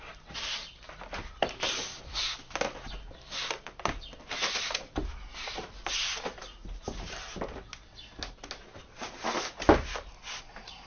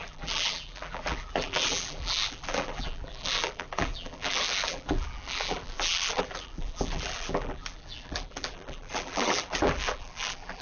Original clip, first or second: first